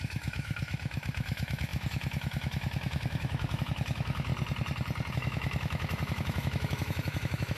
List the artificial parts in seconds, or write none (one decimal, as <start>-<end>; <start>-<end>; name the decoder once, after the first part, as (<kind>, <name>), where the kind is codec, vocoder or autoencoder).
0.0-4.3 (autoencoder, DAC-VAE); 5.1-7.6